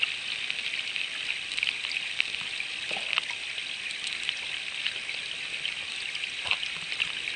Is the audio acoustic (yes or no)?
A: yes